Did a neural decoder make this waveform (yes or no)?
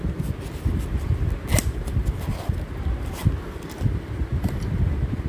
no